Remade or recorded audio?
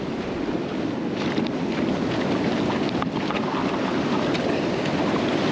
recorded